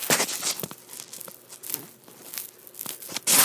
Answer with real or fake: real